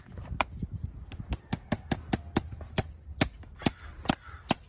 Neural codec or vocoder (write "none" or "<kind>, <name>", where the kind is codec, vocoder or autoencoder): none